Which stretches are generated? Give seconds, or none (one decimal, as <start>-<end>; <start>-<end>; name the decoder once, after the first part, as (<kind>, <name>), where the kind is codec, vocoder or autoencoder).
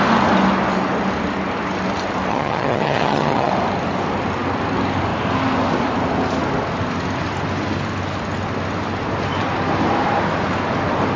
2.3-3.5 (vocoder, HiFi-GAN)